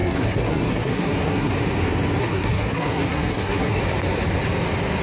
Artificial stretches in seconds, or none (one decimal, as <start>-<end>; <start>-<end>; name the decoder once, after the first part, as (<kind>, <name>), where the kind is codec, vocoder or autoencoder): 0.0-1.5 (codec, SNAC); 2.2-3.8